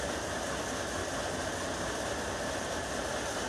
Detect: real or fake real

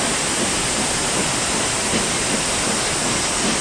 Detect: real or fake real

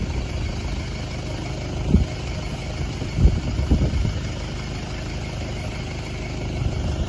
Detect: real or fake real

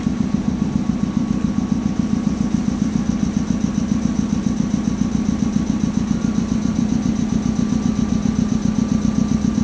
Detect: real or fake real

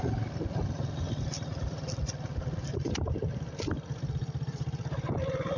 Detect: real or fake fake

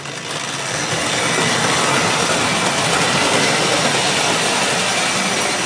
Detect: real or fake real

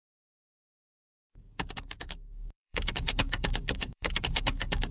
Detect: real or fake fake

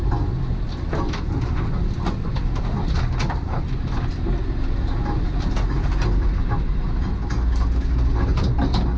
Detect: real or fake real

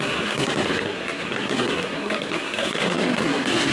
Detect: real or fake fake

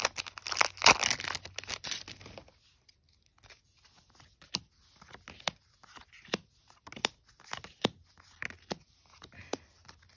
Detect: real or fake real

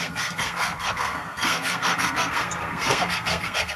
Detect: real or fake fake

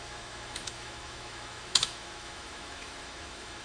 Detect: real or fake fake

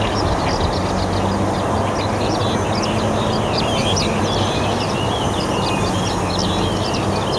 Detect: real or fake real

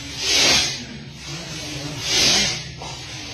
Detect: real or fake real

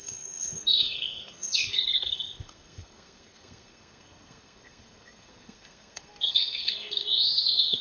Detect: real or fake fake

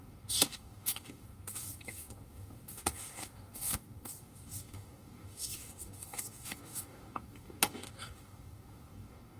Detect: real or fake fake